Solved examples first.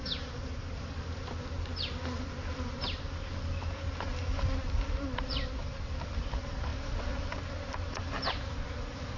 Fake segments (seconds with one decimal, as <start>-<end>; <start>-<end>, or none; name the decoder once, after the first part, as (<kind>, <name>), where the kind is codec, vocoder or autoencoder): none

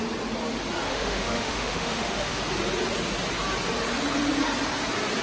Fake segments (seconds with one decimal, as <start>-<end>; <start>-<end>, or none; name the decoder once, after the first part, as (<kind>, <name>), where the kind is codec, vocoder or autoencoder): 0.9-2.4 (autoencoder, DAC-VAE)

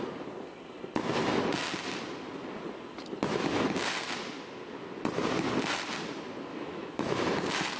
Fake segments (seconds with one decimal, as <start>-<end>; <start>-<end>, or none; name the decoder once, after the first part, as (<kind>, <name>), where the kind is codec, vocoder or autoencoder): 6.5-7.2 (autoencoder, DAC-VAE)

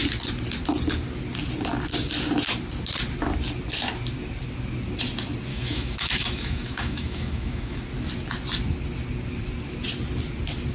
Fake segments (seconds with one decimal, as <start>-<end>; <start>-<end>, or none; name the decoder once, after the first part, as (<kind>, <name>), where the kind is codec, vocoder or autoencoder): 5.5-7.8 (autoencoder, DAC-VAE)

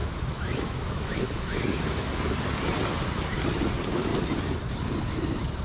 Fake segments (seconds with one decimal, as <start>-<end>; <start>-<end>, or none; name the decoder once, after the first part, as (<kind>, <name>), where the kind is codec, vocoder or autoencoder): 0.0-2.1 (autoencoder, DAC-VAE)